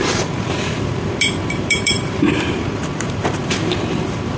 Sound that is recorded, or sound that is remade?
remade